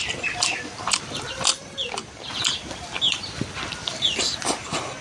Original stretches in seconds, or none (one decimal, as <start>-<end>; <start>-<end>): 0.0-5.0

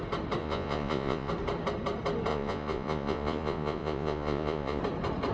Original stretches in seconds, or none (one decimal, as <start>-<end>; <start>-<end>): 0.0-0.4; 1.3-2.3; 4.8-5.3

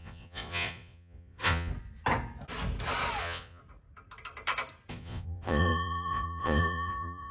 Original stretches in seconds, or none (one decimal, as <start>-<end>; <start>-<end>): 1.7-3.2; 3.6-4.9

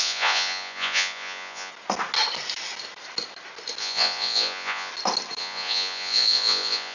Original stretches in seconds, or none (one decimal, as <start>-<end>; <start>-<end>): 1.7-3.8; 4.9-5.4

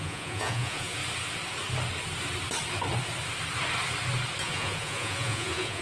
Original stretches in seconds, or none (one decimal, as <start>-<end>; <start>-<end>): 1.0-4.4

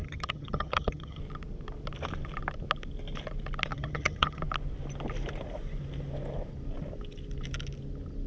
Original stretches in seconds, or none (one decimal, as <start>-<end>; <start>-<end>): 1.2-3.7; 4.4-8.3